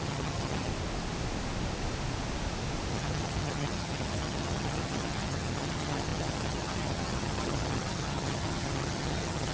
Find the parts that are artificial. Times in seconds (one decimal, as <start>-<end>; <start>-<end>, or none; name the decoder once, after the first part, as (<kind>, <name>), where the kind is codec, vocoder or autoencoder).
0.0-0.7 (vocoder, HiFi-GAN); 2.9-9.5